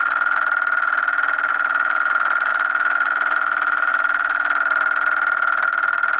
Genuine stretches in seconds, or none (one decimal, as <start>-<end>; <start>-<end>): 0.0-1.5; 2.1-2.5; 3.9-6.2